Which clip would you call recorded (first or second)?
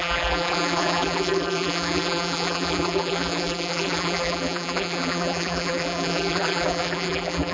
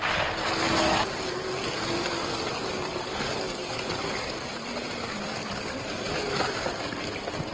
second